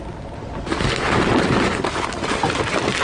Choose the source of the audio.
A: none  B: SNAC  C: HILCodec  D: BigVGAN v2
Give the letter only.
A